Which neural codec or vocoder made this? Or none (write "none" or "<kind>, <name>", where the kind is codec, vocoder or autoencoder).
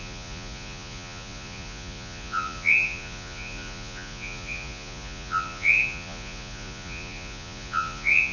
vocoder, Vocos